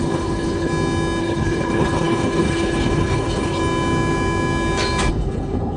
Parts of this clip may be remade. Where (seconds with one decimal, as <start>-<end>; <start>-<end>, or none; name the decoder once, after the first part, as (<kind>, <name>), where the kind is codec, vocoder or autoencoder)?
0.0-0.7 (codec, HILCodec); 1.2-3.6; 5.1-5.8